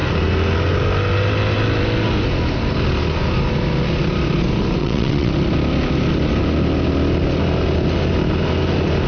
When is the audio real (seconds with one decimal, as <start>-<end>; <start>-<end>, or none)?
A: 0.0-4.8; 5.3-9.1